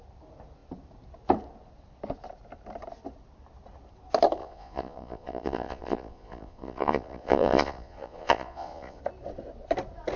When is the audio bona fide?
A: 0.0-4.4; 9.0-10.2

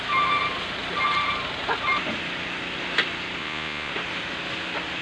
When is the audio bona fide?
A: 0.0-3.4; 3.9-5.0